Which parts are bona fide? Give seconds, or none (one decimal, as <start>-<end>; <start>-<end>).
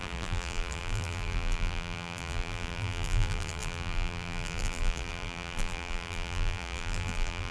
none